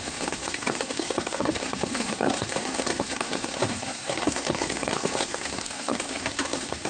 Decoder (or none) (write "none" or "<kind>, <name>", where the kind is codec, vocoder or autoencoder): codec, SNAC